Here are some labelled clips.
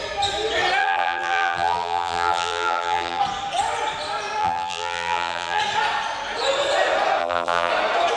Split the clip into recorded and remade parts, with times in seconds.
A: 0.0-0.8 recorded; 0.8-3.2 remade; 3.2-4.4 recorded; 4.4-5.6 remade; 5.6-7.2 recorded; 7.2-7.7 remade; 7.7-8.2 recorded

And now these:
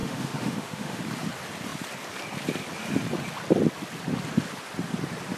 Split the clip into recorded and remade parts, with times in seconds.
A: 0.0-1.0 remade; 1.0-5.4 recorded

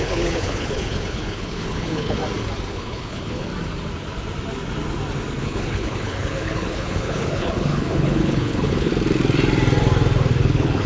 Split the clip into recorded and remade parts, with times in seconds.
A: 0.0-2.2 remade; 2.2-2.7 recorded; 2.7-3.5 remade; 3.5-5.4 recorded; 5.4-8.9 remade; 8.9-10.4 recorded; 10.4-10.9 remade